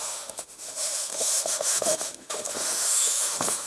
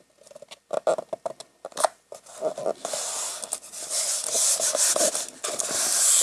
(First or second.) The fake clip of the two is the first